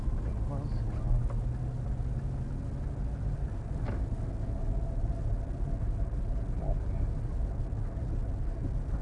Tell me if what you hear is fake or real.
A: real